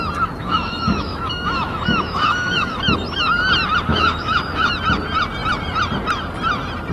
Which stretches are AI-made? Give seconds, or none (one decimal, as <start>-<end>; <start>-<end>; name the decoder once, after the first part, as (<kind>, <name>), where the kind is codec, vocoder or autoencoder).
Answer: 0.4-2.8 (autoencoder, DAC-VAE); 3.9-4.7